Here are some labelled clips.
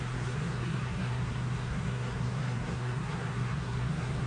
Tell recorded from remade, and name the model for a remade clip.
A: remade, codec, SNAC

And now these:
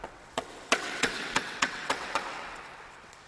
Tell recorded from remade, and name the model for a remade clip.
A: remade, vocoder, WaveNeXt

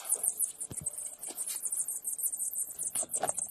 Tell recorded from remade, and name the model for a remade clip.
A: recorded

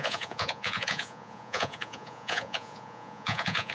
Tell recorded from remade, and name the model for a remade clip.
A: remade, vocoder, Vocos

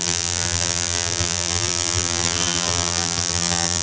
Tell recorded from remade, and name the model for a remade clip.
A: remade, vocoder, BigVGAN v2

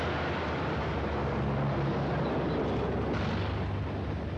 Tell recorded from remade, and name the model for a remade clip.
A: recorded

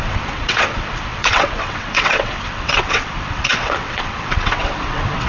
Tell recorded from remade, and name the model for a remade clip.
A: remade, vocoder, WaveNeXt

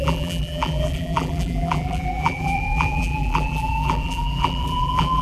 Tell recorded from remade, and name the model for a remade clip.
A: remade, vocoder, BigVGAN v2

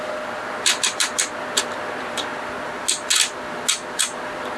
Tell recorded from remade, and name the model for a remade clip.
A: recorded